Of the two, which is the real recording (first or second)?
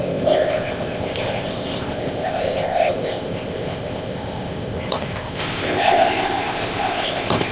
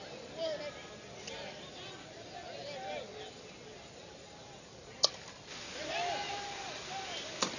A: second